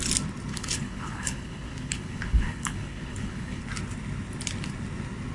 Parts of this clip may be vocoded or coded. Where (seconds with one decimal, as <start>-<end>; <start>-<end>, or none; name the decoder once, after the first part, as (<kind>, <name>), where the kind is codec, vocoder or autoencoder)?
0.5-3.6 (codec, HILCodec)